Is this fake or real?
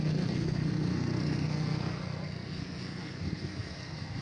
fake